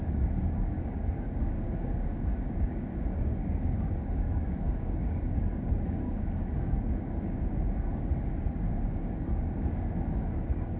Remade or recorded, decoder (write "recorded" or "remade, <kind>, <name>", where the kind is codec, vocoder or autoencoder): remade, codec, DAC